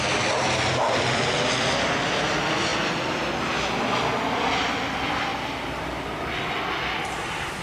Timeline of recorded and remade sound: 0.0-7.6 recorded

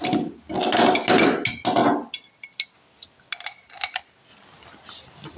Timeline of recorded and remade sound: 0.0-5.4 recorded

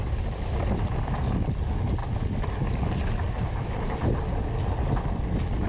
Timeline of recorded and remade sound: 0.0-2.0 recorded; 2.0-2.8 remade; 2.8-5.7 recorded

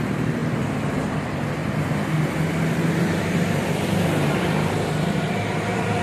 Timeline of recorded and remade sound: 0.0-0.4 remade; 0.4-0.9 recorded; 0.9-1.6 remade; 1.6-3.0 recorded; 3.0-6.0 remade